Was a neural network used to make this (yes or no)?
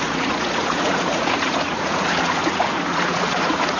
yes